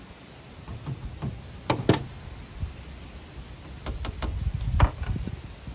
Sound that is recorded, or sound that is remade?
recorded